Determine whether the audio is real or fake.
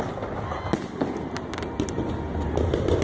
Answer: real